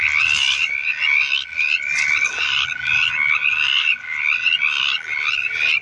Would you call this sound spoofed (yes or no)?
no